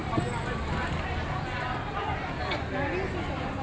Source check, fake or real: real